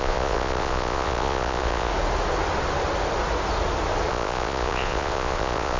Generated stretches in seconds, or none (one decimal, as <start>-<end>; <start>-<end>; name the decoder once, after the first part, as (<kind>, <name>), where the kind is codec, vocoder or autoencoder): 0.0-1.9 (vocoder, Vocos); 4.1-5.8